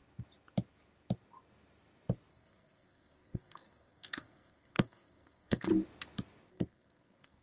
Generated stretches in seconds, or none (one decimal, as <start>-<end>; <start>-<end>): 2.3-5.7; 6.5-7.4